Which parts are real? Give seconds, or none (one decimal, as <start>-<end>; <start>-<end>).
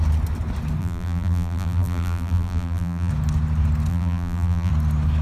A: 0.0-0.8; 3.1-3.9; 4.7-5.2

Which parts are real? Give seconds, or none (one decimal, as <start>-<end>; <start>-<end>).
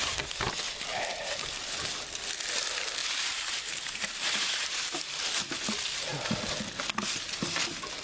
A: 0.0-0.9; 1.5-3.0; 5.5-8.0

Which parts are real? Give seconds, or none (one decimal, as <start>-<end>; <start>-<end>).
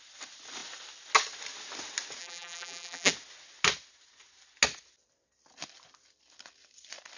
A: 0.0-2.2; 3.1-7.2